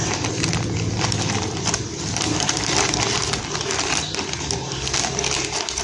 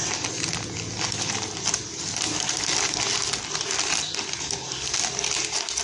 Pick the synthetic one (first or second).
first